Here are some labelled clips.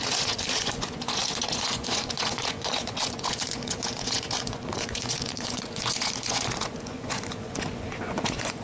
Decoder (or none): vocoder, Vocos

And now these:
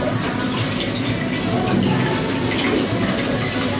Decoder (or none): none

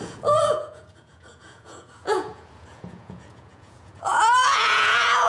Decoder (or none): vocoder, Vocos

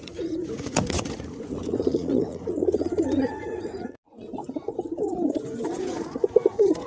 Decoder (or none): vocoder, Vocos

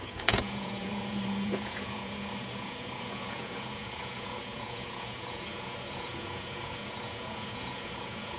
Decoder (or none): vocoder, Vocos